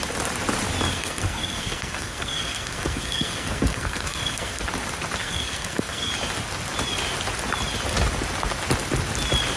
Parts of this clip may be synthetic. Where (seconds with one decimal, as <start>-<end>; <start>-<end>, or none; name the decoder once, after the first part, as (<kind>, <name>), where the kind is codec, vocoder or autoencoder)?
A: 0.9-4.6 (codec, SNAC); 5.2-6.1